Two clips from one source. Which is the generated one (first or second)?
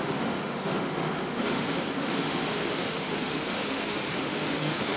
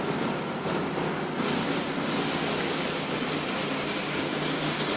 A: first